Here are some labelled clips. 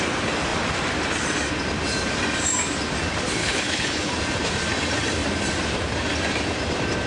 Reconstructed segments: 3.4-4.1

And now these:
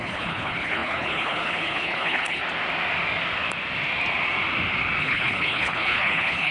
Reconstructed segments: 0.0-2.4; 5.0-6.5

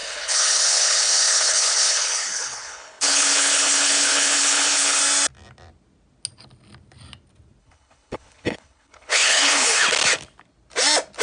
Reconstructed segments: 0.0-5.0; 7.6-9.8

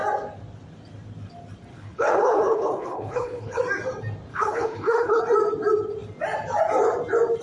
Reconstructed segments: 1.7-3.6; 4.3-5.2

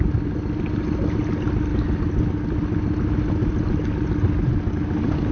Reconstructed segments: none

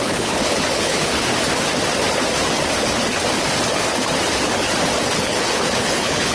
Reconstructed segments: 0.0-1.3; 5.1-6.3

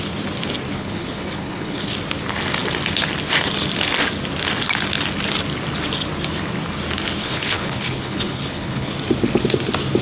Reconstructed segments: 0.7-1.9; 7.2-8.9

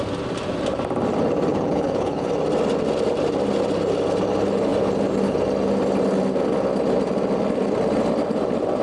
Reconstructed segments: 1.5-2.3